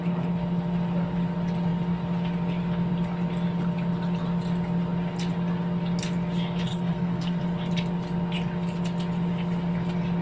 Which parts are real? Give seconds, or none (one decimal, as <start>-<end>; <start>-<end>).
0.0-6.7; 7.4-10.2

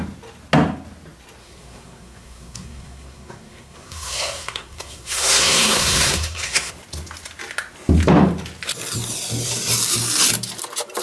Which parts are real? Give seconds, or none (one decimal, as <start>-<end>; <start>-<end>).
0.0-1.4; 6.7-11.0

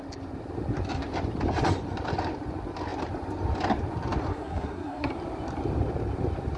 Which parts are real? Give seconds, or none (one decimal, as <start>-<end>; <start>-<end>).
0.0-4.3; 5.1-6.6

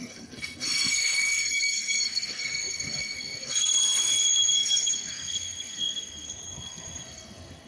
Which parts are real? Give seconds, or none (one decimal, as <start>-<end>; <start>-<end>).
none

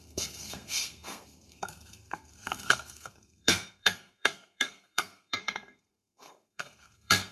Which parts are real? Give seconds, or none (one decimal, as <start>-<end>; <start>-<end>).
none

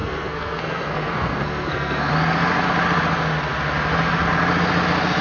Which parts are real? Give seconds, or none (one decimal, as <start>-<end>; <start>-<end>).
2.1-5.2

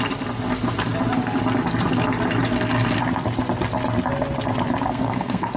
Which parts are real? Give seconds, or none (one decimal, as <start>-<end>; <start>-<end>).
0.0-4.9